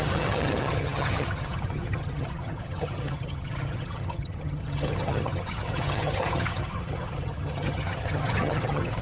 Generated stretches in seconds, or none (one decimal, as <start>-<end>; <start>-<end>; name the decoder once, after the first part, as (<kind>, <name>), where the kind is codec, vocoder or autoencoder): 0.0-9.0 (vocoder, HiFi-GAN)